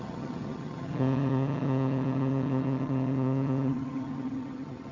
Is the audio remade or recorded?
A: remade